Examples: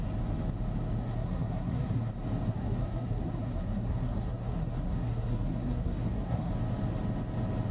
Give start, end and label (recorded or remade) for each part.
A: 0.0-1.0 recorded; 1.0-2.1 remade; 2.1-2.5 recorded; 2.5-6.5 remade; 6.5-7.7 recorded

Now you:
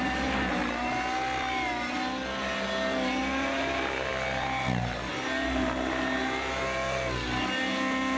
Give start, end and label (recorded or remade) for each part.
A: 0.0-8.2 recorded

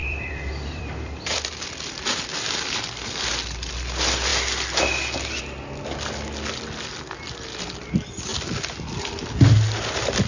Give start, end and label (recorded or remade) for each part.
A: 0.0-1.5 remade; 1.5-2.3 recorded; 2.3-3.3 remade; 3.3-10.3 recorded